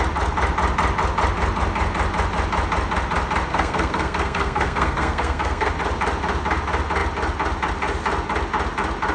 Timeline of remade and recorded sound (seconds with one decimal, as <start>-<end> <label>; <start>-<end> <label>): 0.0-3.5 recorded; 3.5-5.7 remade; 5.7-9.1 recorded